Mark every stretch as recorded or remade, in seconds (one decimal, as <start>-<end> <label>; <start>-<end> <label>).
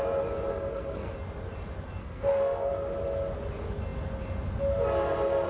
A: 0.0-0.5 recorded; 0.5-1.1 remade; 1.1-2.0 recorded; 2.0-2.7 remade; 2.7-5.5 recorded